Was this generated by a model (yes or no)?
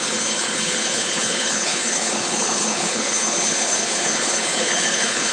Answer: yes